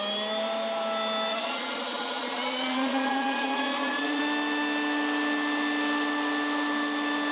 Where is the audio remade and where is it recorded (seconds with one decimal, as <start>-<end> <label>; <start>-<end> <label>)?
0.0-1.3 recorded; 1.3-4.2 remade; 4.2-7.3 recorded